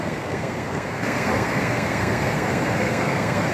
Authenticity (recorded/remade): remade